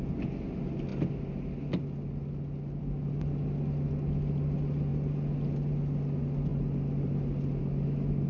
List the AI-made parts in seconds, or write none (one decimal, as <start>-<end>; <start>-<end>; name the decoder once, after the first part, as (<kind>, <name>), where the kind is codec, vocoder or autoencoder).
none